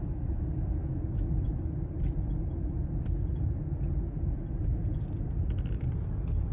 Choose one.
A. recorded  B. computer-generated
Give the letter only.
A